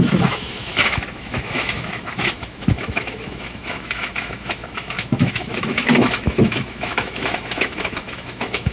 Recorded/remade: remade